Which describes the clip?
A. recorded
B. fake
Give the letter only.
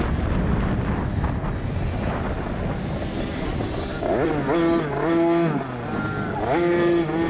A